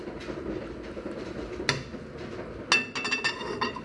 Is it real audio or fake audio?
real